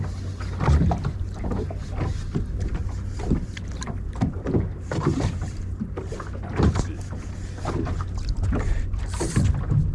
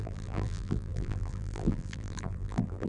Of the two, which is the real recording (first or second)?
first